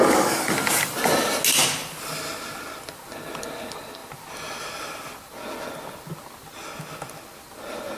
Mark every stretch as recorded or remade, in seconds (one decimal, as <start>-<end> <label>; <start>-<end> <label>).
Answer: 0.0-0.5 remade; 0.5-8.0 recorded